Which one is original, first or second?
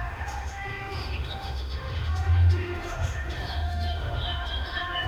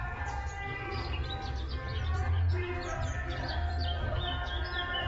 second